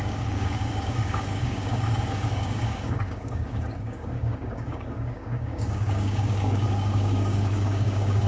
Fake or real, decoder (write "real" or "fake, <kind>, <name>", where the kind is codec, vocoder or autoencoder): fake, codec, DAC